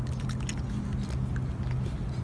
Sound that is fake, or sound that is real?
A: real